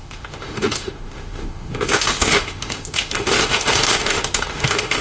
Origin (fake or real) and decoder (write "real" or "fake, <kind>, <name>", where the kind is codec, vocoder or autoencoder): fake, autoencoder, DAC-VAE